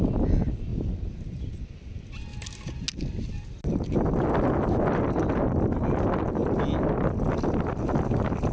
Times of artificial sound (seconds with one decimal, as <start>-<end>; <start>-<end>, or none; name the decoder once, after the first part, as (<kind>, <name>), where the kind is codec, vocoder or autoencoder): none